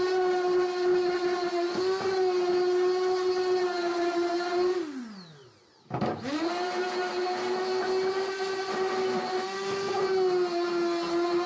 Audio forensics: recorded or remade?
recorded